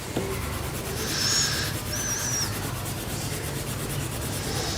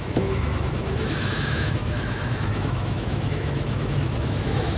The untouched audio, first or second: first